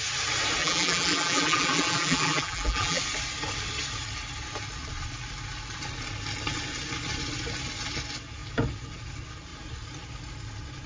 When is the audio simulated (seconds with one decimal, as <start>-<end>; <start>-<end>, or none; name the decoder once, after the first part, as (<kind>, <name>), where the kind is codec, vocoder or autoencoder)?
0.6-3.0 (vocoder, BigVGAN v2)